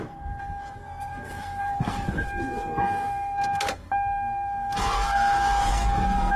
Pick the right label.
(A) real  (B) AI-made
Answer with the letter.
B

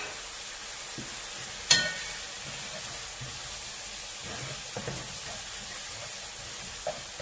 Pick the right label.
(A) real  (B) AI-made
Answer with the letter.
A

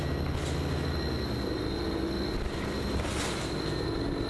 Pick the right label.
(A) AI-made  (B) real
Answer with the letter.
B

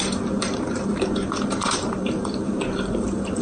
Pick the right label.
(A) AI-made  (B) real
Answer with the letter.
A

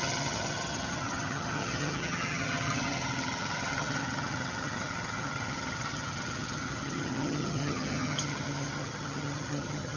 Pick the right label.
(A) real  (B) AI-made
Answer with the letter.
B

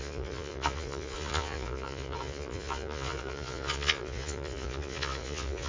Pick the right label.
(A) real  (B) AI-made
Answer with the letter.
B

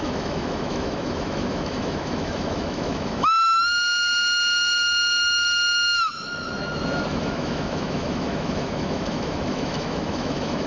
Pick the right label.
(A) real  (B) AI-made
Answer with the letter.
B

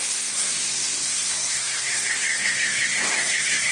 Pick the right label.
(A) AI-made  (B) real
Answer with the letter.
A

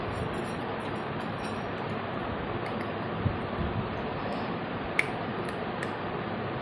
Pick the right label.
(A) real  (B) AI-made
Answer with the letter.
A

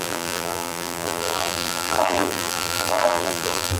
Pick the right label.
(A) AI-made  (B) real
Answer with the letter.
A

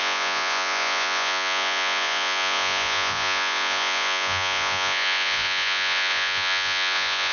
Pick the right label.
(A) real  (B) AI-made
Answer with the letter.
B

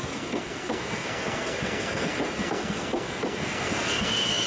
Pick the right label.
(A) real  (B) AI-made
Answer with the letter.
B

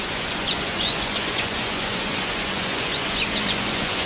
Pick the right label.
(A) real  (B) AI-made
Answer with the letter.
B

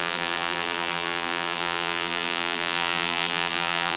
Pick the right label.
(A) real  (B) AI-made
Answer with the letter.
B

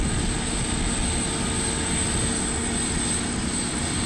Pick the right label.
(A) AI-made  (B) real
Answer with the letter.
B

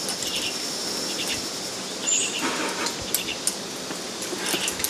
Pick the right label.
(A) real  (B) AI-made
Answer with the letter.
A